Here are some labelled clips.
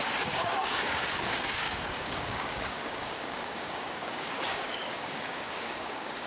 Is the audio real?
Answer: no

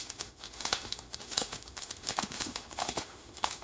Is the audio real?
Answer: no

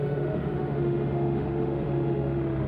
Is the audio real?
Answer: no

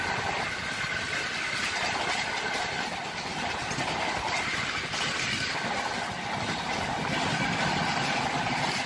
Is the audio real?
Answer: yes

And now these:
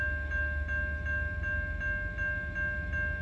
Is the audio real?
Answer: yes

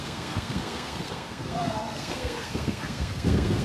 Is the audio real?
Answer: no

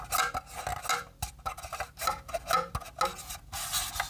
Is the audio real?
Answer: yes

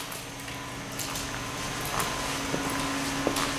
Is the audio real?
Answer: yes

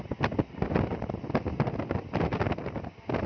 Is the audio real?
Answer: yes